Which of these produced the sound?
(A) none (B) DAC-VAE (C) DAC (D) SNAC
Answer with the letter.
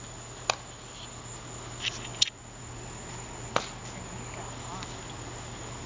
A